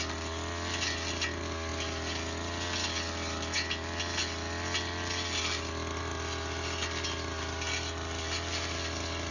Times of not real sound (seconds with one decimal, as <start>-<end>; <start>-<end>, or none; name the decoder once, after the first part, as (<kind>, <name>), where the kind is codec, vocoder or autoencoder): none